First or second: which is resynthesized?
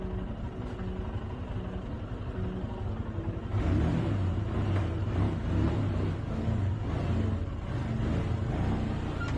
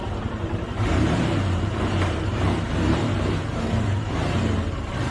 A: second